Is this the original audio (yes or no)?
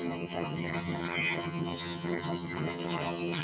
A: no